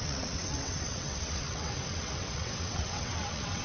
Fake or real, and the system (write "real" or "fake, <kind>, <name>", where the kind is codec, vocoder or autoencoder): fake, vocoder, WaveNeXt